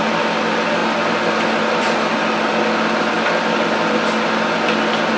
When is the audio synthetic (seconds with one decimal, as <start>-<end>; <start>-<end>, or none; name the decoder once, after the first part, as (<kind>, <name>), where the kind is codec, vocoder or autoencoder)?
none